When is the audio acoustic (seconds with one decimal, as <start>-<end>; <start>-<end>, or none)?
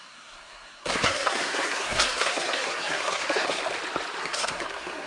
3.6-4.2